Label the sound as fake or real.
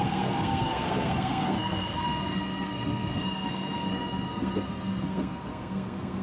fake